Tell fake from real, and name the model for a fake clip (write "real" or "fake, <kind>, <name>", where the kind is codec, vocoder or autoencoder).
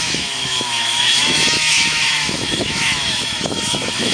fake, autoencoder, DAC-VAE